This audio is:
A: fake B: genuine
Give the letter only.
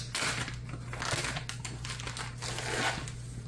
B